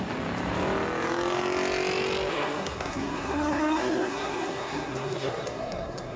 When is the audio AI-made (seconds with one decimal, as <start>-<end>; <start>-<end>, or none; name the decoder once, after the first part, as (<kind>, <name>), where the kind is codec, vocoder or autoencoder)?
2.3-6.2 (codec, SNAC)